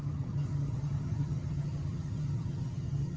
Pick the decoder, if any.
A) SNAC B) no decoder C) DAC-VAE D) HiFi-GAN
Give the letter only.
D